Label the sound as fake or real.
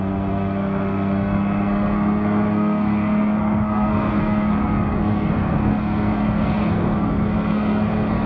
fake